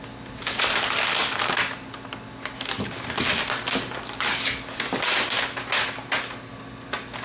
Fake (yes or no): no